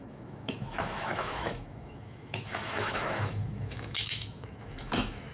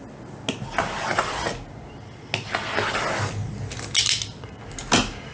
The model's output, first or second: first